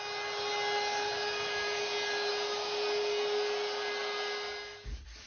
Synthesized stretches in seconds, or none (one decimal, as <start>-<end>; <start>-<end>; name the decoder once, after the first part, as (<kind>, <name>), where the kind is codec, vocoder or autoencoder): none